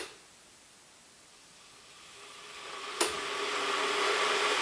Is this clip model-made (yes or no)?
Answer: no